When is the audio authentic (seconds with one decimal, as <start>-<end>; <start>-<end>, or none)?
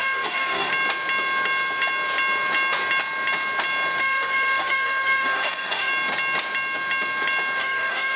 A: 0.7-4.0; 5.9-7.6